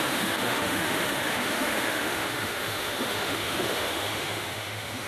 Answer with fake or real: fake